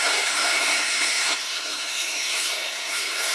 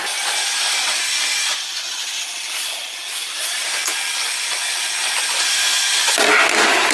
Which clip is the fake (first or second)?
first